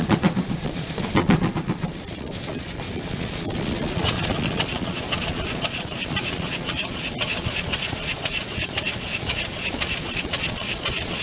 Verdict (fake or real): fake